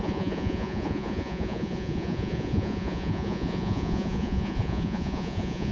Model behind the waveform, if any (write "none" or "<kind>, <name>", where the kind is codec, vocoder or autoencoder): vocoder, Vocos